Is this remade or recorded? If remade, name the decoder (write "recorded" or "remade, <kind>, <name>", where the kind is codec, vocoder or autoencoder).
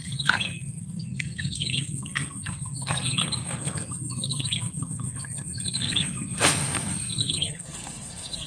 remade, codec, SNAC